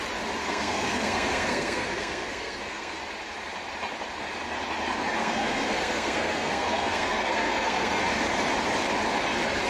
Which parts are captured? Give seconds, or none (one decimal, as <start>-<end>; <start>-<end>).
0.0-0.4; 3.0-5.2; 8.0-9.7